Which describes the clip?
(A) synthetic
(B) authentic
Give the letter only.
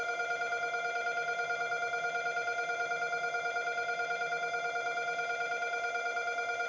B